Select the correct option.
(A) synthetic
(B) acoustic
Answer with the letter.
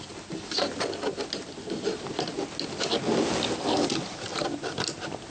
B